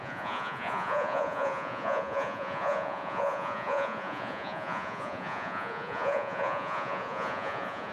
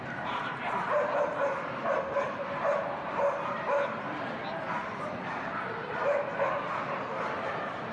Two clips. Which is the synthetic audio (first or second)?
first